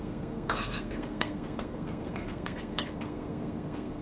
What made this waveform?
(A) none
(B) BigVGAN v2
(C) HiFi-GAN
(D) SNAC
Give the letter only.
D